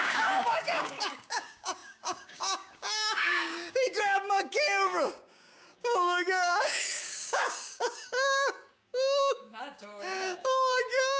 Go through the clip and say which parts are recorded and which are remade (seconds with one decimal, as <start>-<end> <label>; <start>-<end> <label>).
0.0-11.2 remade